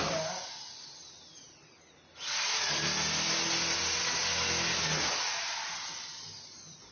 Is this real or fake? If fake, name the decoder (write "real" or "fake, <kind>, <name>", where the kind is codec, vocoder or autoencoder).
real